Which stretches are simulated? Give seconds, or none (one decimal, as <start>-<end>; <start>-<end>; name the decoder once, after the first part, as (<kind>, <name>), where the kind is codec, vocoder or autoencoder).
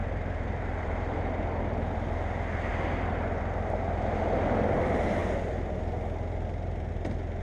0.0-1.2 (vocoder, BigVGAN v2)